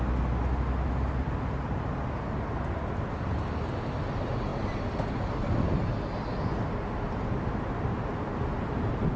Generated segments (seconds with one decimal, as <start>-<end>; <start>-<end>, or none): none